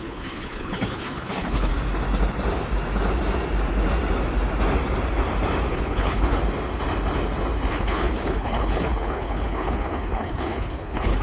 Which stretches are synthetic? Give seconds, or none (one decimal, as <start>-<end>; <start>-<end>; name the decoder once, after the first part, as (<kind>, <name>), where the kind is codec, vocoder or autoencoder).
0.0-1.7 (codec, HILCodec); 5.7-6.4; 7.7-11.2